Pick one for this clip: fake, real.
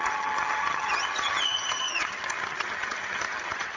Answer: fake